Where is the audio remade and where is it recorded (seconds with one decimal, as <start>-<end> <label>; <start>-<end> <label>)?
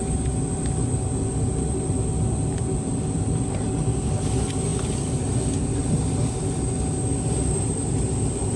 0.0-8.6 recorded